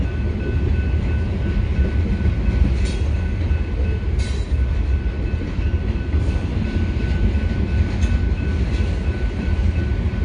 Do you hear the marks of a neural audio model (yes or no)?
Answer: no